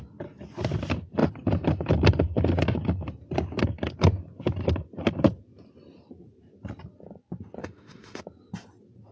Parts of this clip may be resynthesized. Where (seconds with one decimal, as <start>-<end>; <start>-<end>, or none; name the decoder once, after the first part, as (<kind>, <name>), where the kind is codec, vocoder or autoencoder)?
7.6-8.2 (autoencoder, DAC-VAE)